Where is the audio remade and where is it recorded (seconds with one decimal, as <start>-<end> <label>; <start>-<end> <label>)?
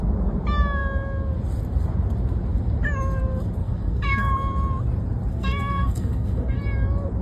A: 0.0-3.6 recorded; 3.6-4.3 remade; 4.3-5.3 recorded; 5.3-6.6 remade; 6.6-7.2 recorded